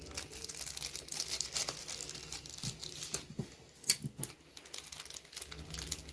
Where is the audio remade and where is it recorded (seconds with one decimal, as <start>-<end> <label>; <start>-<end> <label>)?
0.0-6.1 recorded